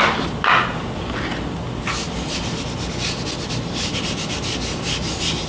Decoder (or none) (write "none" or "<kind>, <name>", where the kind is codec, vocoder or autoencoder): none